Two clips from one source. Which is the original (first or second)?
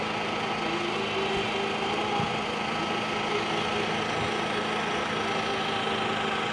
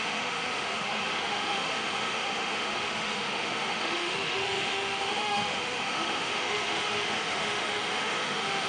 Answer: first